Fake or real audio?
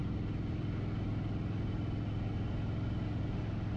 real